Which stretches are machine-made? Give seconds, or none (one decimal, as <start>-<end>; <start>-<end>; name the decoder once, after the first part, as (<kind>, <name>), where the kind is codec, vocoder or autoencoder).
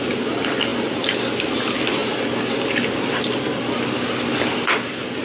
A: none